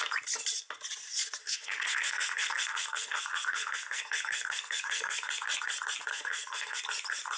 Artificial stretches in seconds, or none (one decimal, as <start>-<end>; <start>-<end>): 1.4-5.3; 6.1-6.8